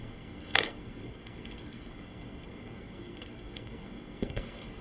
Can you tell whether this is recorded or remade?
remade